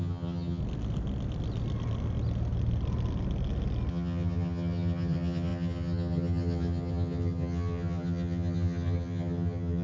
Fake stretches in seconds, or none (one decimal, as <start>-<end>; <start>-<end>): 0.0-0.6; 3.9-9.8